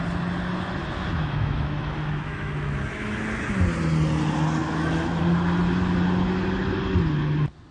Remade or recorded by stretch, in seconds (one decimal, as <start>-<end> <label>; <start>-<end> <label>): 0.0-0.8 recorded; 0.8-3.2 remade; 3.2-4.6 recorded; 4.6-5.2 remade; 5.2-7.7 recorded